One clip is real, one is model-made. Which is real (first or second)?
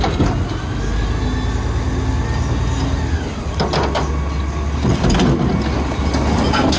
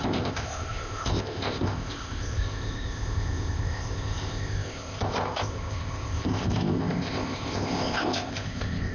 first